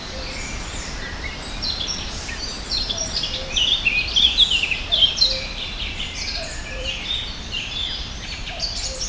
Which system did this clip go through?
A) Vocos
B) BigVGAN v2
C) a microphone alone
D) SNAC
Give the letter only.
B